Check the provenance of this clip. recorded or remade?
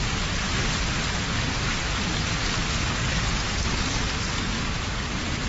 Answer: recorded